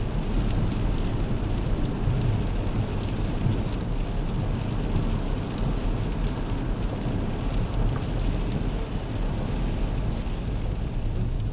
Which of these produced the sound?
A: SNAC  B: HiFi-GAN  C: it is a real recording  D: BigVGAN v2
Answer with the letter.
C